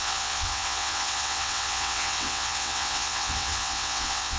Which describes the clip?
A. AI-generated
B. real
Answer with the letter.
A